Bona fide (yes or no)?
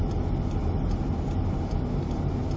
yes